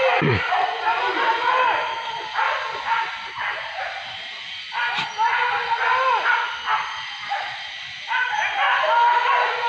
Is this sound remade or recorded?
recorded